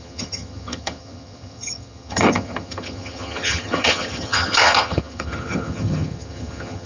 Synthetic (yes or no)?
yes